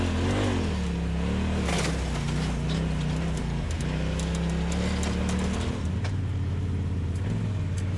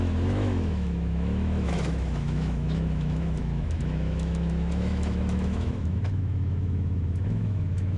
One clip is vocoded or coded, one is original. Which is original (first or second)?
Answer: first